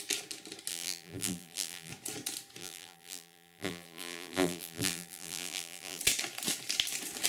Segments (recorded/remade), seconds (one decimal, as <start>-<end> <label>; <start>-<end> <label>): 0.0-0.7 recorded; 0.7-1.9 remade; 1.9-2.6 recorded; 2.6-6.0 remade; 6.0-7.3 recorded